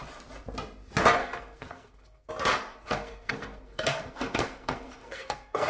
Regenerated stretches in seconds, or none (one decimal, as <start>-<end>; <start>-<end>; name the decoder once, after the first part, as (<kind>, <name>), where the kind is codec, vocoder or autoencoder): 1.2-2.3 (codec, SNAC); 2.7-5.7